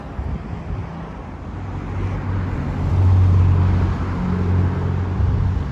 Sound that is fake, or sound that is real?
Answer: real